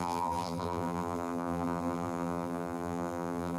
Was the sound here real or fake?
fake